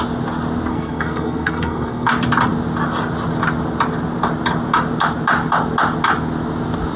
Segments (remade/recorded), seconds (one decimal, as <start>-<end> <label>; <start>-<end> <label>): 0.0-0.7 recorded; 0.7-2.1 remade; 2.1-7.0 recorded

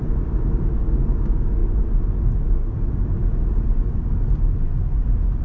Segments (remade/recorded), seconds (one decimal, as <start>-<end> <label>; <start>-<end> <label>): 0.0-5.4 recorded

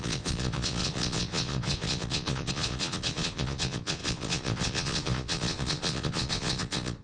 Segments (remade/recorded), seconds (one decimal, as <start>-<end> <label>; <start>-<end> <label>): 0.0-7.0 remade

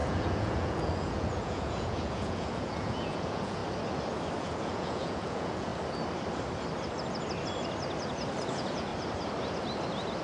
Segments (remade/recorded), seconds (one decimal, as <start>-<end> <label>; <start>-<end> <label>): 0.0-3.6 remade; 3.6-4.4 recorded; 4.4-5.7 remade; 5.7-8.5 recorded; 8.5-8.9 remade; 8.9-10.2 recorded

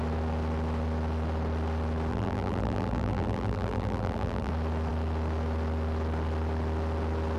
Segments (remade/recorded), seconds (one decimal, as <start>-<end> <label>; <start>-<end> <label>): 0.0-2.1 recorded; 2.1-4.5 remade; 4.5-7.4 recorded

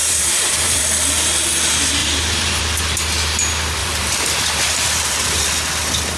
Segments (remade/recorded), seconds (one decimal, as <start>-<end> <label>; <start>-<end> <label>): 0.0-0.8 remade; 0.8-2.0 recorded; 2.0-2.6 remade; 2.6-3.8 recorded; 3.8-5.5 remade; 5.5-6.2 recorded